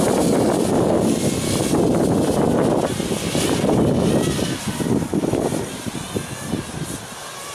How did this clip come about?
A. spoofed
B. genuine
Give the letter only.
B